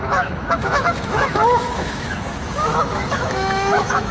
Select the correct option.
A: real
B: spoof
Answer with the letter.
B